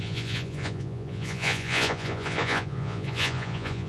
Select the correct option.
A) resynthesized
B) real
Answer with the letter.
A